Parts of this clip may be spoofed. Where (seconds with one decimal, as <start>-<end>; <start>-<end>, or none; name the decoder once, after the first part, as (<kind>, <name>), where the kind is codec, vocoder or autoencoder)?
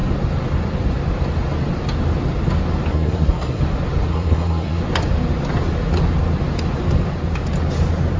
2.9-3.6 (codec, SNAC); 4.1-4.8